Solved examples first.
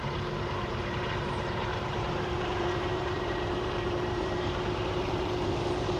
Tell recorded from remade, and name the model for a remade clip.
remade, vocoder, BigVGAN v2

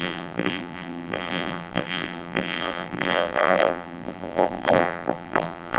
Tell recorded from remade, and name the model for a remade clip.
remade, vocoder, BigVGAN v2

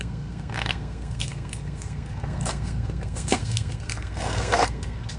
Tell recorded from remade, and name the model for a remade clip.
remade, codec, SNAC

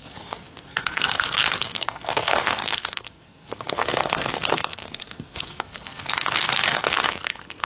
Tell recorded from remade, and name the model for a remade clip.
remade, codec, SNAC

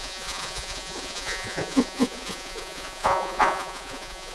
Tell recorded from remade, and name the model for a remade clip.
remade, vocoder, Vocos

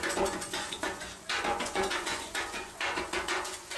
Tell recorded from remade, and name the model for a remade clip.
remade, vocoder, Vocos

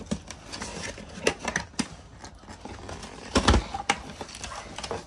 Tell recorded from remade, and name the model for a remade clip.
recorded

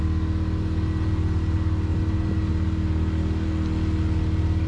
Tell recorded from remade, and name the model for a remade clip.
recorded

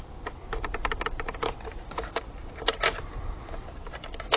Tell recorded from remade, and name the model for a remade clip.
recorded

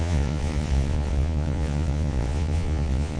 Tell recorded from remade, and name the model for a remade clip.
remade, vocoder, Vocos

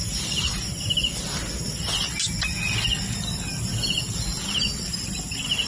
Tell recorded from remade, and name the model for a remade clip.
recorded